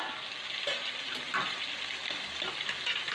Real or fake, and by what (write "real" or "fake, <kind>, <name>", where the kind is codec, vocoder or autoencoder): real